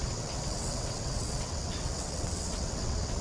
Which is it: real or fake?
fake